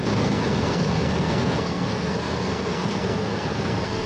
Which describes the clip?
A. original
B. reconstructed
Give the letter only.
B